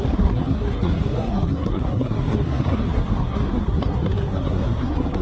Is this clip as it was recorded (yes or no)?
no